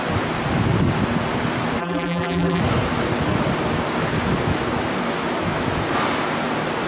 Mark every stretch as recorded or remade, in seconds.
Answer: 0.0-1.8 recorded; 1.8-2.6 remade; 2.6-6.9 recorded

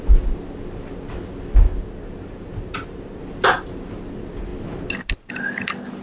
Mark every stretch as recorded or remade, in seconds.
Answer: 0.0-1.7 recorded; 1.7-3.2 remade; 3.2-6.0 recorded

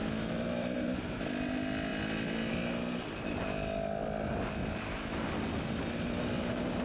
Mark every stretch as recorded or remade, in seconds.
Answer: 0.0-1.2 remade; 1.2-6.8 recorded

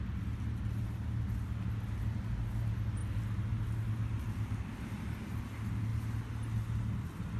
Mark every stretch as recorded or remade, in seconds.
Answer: 0.0-7.4 recorded

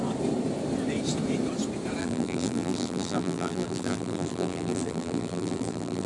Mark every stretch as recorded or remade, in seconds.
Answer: 0.0-2.0 recorded; 2.0-6.1 remade

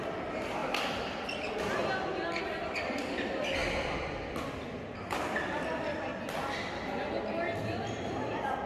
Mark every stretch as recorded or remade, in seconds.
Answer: 0.0-8.7 recorded

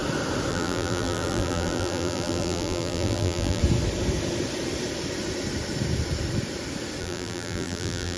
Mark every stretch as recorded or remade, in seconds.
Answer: 0.0-0.5 recorded; 0.5-3.6 remade; 3.6-7.0 recorded; 7.0-8.2 remade